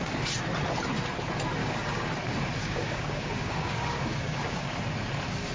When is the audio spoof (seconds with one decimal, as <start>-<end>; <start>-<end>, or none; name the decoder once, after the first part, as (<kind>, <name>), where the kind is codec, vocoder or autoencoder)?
1.6-2.1 (codec, DAC); 2.6-4.8